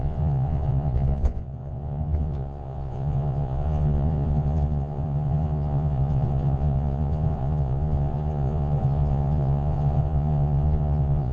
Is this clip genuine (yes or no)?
no